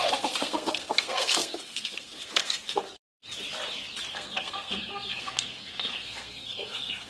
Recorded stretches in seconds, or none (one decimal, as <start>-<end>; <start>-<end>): 2.9-4.1